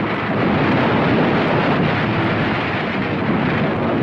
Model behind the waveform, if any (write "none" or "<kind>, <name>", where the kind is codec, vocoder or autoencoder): none